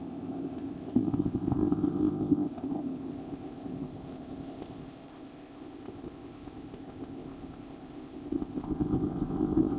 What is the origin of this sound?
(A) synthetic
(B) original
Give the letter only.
A